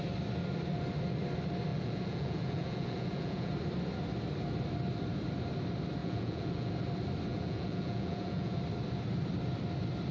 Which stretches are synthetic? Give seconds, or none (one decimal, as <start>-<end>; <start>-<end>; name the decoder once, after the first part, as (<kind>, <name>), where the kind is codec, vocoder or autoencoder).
1.7-3.5 (vocoder, Vocos); 6.0-6.7; 7.3-8.6